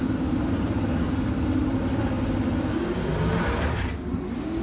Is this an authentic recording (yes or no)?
yes